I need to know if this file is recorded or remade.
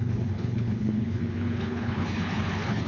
remade